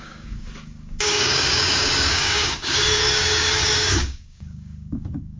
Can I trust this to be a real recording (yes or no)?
no